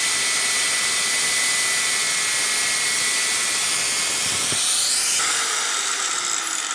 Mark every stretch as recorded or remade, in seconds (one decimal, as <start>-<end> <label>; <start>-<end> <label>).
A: 0.0-4.2 recorded; 4.2-5.2 remade; 5.2-6.7 recorded